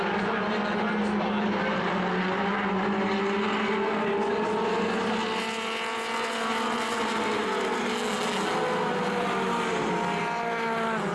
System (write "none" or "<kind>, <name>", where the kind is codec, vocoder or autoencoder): none